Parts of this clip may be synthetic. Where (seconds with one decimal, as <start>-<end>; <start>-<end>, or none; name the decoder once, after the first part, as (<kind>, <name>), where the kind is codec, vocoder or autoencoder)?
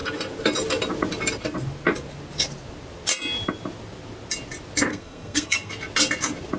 4.9-5.7 (codec, SNAC)